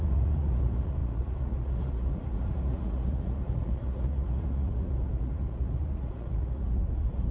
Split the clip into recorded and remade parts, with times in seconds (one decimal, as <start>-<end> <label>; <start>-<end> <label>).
0.0-7.3 remade